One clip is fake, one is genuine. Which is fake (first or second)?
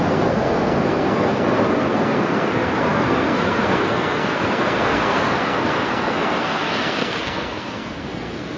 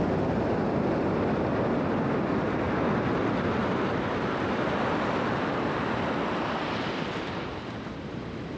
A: first